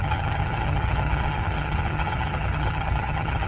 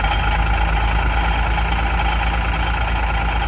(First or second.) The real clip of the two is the second